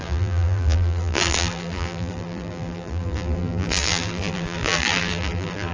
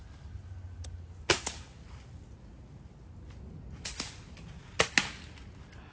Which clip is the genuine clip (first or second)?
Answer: second